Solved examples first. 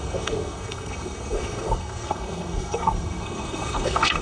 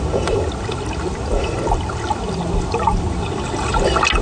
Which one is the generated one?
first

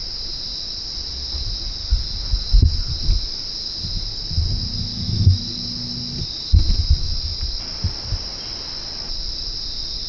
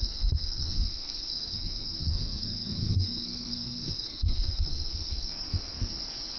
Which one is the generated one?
second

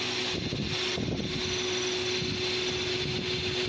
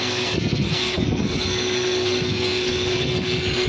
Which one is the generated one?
second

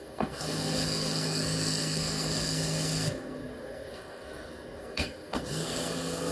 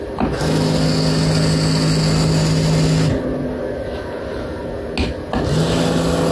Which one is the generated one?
first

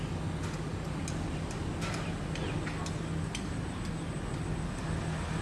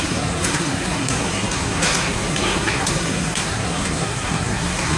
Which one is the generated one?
second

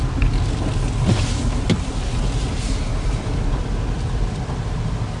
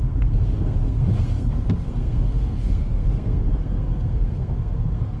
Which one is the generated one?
second